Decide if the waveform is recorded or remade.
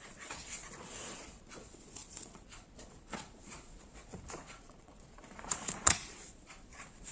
remade